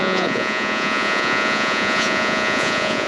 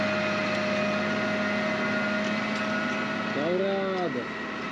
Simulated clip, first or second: first